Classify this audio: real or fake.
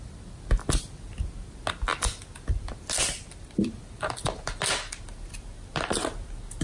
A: real